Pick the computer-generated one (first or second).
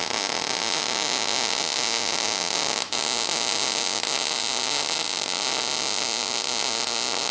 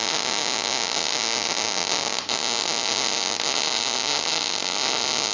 second